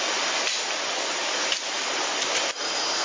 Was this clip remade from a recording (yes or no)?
no